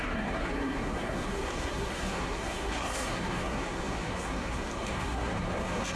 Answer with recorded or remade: remade